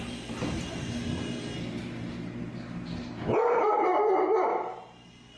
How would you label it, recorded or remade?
recorded